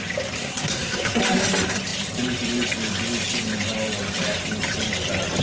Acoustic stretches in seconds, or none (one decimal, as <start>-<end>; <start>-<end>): 0.0-0.4; 1.2-5.4